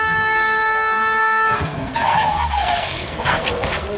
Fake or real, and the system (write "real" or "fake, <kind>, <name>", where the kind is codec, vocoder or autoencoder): fake, codec, SNAC